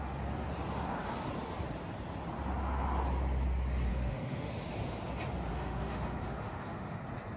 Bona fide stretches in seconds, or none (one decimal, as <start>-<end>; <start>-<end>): 0.0-3.9; 4.5-5.5; 7.0-7.4